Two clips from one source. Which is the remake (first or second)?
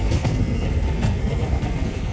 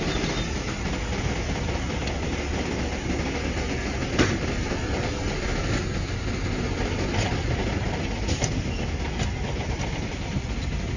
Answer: first